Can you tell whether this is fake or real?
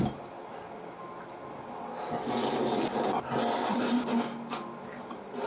real